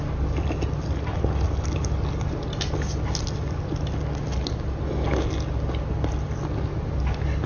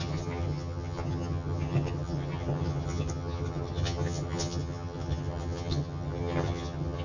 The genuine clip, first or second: first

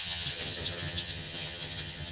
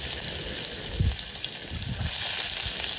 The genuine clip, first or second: second